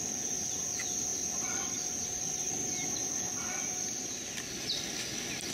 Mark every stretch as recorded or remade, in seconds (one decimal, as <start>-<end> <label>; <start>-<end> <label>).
0.0-5.5 recorded